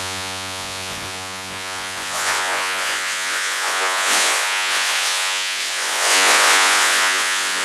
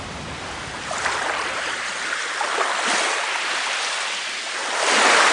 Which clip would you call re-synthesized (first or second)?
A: first